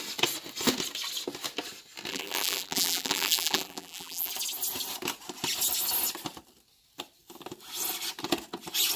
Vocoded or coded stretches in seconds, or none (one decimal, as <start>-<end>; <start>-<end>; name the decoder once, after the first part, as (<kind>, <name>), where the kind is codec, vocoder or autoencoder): 2.1-4.3 (vocoder, BigVGAN v2)